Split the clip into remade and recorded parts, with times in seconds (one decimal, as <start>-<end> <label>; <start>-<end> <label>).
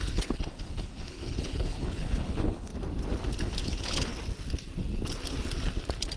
0.0-2.7 remade; 2.7-3.4 recorded; 3.4-4.1 remade; 4.1-6.2 recorded